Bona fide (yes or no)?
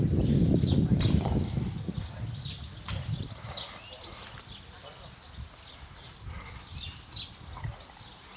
yes